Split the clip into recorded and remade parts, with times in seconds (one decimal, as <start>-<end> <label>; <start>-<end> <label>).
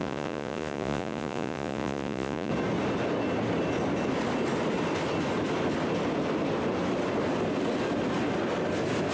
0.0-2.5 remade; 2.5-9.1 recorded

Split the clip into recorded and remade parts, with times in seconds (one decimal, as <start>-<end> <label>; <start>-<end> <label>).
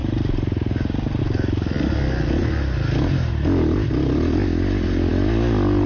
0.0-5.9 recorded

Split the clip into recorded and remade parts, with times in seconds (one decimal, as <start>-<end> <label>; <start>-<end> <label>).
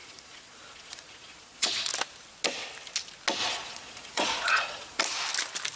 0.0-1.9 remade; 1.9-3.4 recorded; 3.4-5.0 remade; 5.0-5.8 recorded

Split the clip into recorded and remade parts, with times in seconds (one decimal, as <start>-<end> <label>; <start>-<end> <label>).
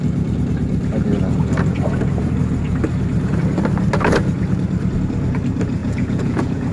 0.0-5.8 recorded; 5.8-6.7 remade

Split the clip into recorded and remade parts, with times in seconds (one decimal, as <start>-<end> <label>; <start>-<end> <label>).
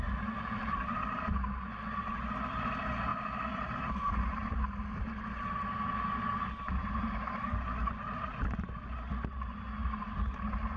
0.0-10.8 recorded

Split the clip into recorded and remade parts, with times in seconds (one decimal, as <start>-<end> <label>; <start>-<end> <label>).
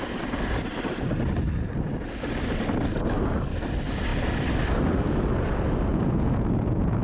0.0-5.9 recorded; 5.9-7.0 remade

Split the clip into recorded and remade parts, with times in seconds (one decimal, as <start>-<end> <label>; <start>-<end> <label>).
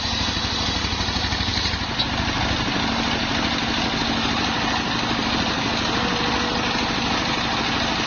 0.0-8.1 recorded